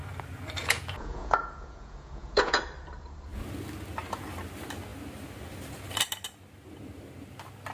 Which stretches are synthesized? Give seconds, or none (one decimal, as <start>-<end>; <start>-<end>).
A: 0.6-2.6